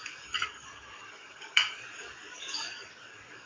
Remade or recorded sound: remade